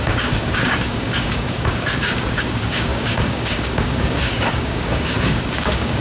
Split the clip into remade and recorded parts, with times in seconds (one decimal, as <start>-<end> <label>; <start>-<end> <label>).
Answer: 0.0-6.0 remade